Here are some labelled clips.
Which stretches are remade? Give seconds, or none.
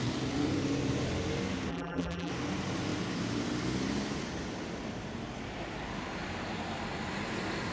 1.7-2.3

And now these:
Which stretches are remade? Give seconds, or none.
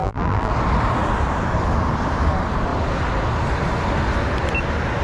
0.0-0.5